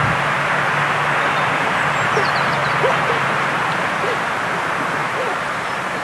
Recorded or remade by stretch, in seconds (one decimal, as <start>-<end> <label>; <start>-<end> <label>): 0.0-5.0 recorded; 5.0-6.0 remade